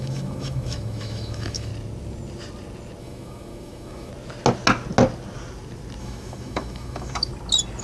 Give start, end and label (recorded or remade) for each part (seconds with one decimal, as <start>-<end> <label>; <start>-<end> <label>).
0.0-1.7 remade; 1.7-3.0 recorded; 3.0-4.1 remade; 4.1-6.0 recorded; 6.0-7.3 remade; 7.3-7.8 recorded

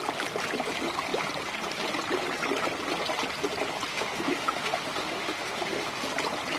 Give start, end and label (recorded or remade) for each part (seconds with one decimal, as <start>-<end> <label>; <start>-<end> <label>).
0.0-3.9 recorded; 3.9-6.1 remade; 6.1-6.6 recorded

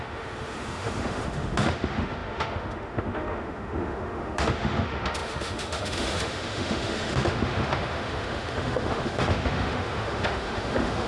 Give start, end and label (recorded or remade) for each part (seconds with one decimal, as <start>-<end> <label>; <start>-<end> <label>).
0.0-11.1 remade